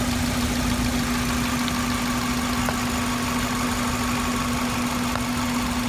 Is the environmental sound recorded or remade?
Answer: recorded